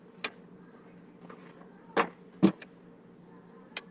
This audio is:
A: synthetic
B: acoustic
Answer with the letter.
B